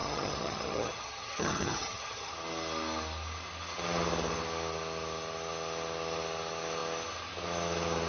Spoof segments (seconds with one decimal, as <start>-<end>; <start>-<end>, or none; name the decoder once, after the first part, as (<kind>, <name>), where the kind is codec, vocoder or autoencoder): 0.0-2.3 (vocoder, HiFi-GAN)

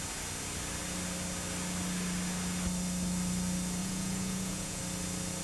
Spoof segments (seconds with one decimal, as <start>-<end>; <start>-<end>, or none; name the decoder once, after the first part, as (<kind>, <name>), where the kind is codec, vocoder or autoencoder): 3.8-4.8 (vocoder, Vocos)

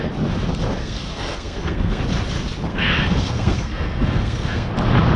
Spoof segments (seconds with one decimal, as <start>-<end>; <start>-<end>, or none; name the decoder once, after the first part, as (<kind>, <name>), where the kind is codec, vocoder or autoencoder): 0.8-2.0 (codec, SNAC); 2.7-4.7

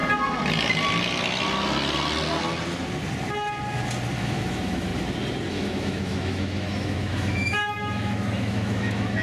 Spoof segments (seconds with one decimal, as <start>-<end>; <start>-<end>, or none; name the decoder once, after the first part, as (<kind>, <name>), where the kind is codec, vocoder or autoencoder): 4.2-4.9 (autoencoder, DAC-VAE); 5.5-9.2

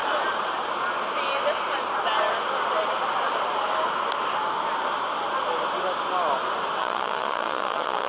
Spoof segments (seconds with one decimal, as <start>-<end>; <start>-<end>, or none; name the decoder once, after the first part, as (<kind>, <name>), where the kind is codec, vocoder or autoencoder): 6.8-8.1 (vocoder, Vocos)

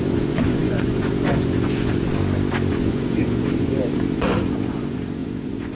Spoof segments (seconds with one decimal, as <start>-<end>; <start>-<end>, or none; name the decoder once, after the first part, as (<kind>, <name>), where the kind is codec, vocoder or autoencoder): 0.0-2.1 (vocoder, Vocos); 2.7-5.8